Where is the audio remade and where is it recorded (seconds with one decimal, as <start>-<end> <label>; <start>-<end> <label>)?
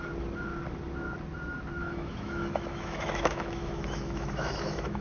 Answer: 0.0-1.8 recorded; 1.8-5.0 remade